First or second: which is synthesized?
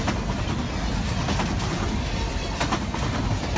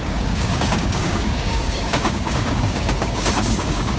second